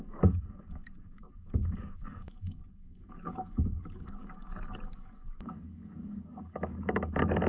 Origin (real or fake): fake